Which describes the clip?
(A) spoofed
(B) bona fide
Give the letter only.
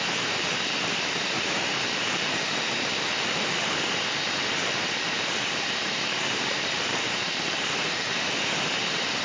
A